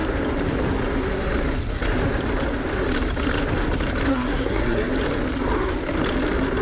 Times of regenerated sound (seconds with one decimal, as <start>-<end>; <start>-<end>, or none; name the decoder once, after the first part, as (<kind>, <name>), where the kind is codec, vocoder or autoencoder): 4.1-4.9 (codec, SNAC)